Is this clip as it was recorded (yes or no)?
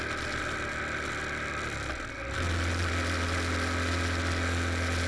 yes